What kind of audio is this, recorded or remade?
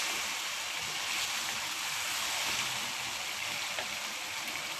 recorded